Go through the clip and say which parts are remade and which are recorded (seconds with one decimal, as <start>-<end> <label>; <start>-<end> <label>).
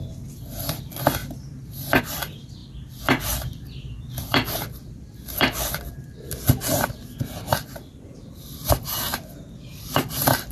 0.0-2.6 recorded; 2.6-6.2 remade; 6.2-7.5 recorded; 7.5-10.5 remade